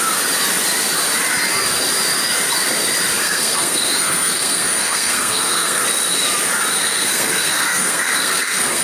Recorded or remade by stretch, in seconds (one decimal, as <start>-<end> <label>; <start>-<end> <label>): 0.0-3.2 recorded; 3.2-5.8 remade; 5.8-6.7 recorded; 6.7-8.8 remade